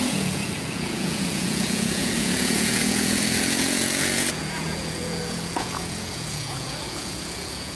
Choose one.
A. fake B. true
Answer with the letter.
A